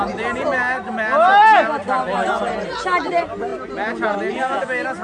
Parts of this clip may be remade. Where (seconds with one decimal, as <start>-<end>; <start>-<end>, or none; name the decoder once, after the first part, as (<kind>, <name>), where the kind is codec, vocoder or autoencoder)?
none